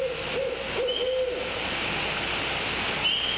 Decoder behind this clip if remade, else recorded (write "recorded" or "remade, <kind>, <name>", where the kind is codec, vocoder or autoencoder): recorded